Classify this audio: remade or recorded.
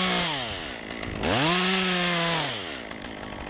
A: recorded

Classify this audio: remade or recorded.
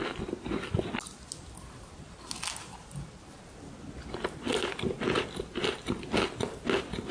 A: recorded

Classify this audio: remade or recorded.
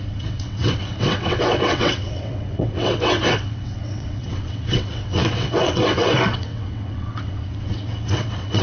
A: remade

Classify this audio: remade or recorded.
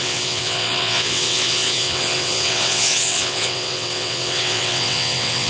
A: remade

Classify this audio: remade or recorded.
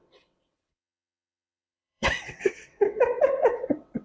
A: remade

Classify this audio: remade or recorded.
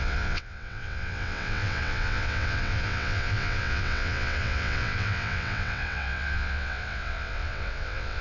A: remade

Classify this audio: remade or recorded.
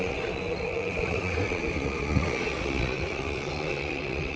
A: remade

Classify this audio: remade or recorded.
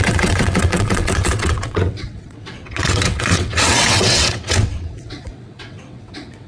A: remade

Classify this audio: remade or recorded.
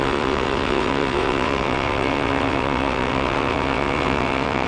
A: remade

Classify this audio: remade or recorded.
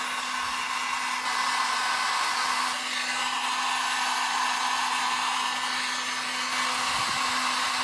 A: recorded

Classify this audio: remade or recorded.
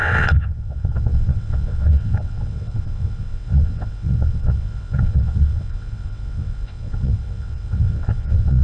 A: remade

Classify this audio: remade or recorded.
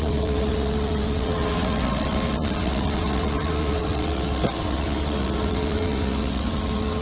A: remade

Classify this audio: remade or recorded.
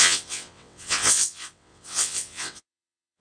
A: remade